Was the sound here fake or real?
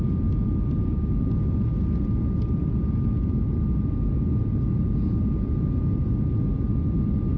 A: real